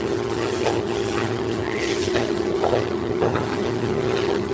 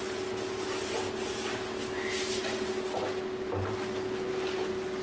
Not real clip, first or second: first